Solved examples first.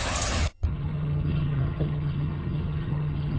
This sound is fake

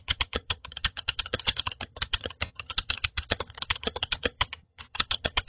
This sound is fake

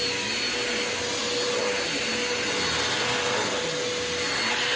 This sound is real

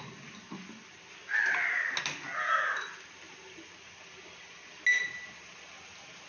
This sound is real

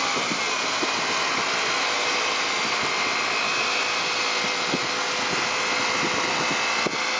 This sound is real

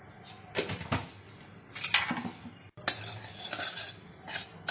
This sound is real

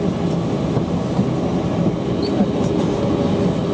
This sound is real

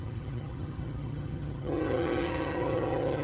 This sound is fake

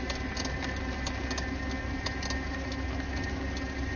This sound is real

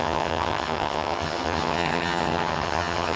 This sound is fake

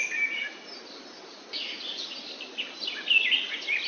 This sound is real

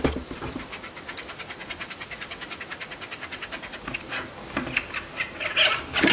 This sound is real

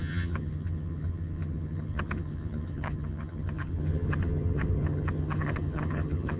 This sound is fake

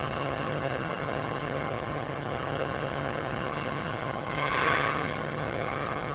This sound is fake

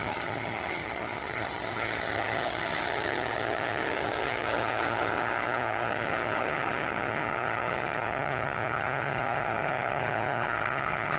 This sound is fake